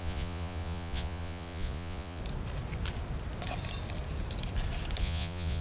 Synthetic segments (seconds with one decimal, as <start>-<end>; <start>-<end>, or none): 0.0-2.2; 5.0-5.6